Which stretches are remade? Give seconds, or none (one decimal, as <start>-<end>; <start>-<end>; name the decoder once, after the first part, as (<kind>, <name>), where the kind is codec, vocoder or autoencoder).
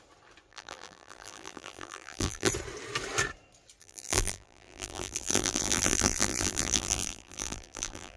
0.5-2.5 (vocoder, BigVGAN v2); 3.8-8.2